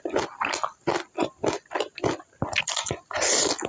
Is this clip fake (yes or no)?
no